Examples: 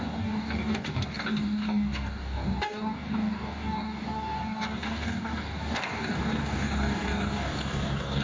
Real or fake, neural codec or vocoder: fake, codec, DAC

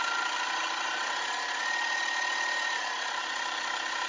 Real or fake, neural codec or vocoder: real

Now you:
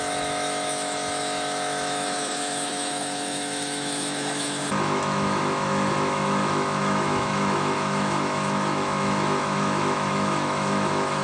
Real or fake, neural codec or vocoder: fake, autoencoder, DAC-VAE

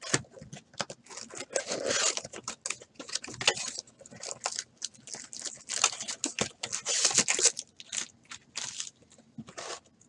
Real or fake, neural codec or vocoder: real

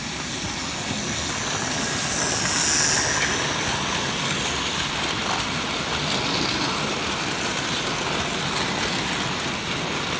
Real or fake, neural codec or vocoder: real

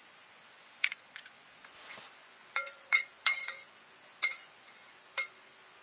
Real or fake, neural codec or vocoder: fake, vocoder, Vocos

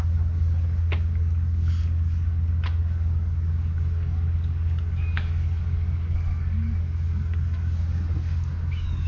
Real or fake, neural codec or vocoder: fake, codec, DAC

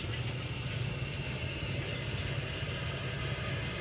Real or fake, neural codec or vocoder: real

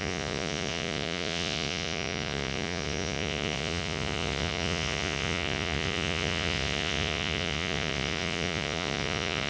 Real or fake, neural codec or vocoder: fake, vocoder, Vocos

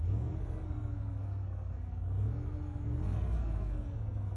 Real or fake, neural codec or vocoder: fake, codec, SNAC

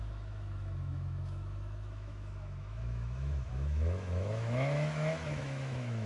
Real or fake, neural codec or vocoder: fake, autoencoder, DAC-VAE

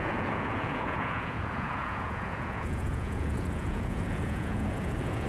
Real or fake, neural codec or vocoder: fake, vocoder, Vocos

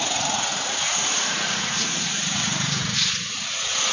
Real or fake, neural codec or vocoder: fake, vocoder, Vocos